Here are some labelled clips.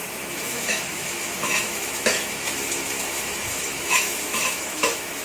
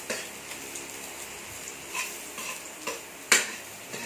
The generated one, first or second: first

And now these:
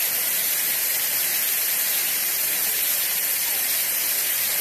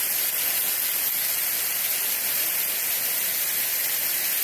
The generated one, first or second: first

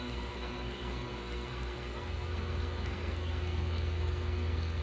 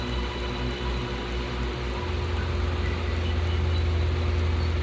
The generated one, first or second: first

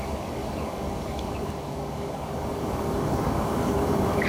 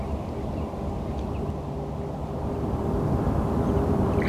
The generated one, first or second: first